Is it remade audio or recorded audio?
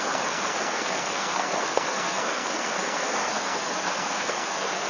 remade